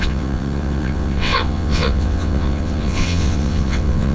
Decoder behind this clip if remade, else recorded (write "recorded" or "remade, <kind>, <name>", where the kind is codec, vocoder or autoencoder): remade, vocoder, WaveNeXt